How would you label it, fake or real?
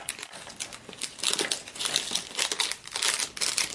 real